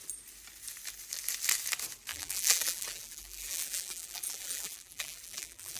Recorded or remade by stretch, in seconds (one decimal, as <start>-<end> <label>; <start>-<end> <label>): 0.0-2.1 recorded; 2.1-5.8 remade